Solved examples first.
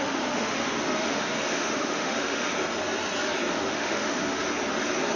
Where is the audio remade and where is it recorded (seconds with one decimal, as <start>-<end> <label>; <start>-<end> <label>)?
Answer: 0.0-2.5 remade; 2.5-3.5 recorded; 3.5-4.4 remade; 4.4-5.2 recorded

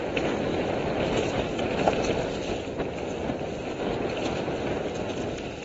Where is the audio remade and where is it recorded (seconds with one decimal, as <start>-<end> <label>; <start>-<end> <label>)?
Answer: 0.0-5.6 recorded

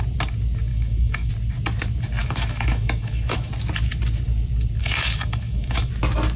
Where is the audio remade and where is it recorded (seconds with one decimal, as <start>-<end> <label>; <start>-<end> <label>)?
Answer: 0.0-0.7 recorded; 0.7-1.3 remade; 1.3-2.2 recorded; 2.2-3.5 remade; 3.5-4.8 recorded; 4.8-5.9 remade; 5.9-6.4 recorded